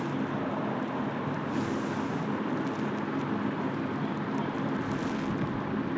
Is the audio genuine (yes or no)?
yes